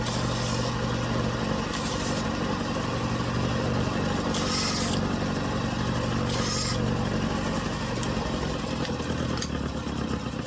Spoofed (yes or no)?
no